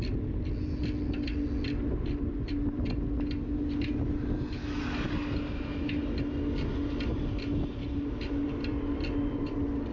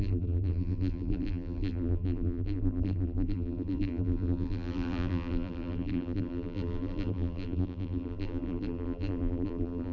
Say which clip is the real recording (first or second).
first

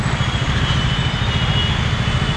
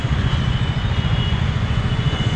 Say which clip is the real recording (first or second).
first